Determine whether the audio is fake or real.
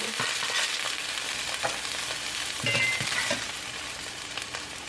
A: real